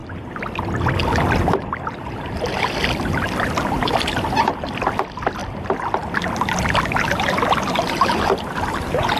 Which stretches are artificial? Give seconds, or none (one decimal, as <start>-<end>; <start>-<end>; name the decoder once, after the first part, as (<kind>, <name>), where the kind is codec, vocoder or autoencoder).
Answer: none